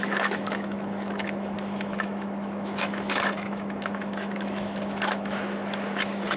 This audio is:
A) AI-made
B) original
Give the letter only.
A